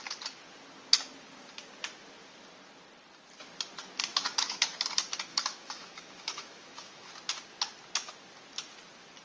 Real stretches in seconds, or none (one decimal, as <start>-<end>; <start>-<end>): 0.0-4.1; 4.8-5.3; 7.1-9.2

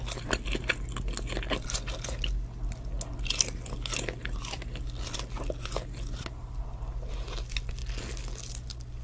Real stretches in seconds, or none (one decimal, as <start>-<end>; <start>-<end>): 0.0-9.0

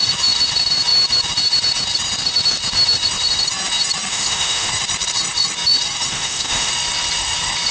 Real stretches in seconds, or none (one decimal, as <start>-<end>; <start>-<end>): 0.0-4.1; 4.7-6.1; 6.7-7.7

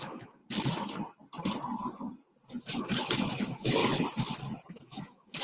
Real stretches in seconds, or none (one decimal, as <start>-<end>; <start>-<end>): 0.4-2.6; 3.8-4.7

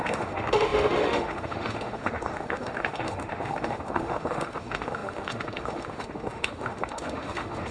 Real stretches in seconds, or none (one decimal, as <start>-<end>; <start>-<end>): none